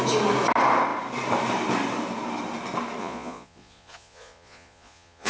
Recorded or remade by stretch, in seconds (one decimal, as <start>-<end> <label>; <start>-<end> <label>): 0.0-3.0 recorded; 3.0-5.3 remade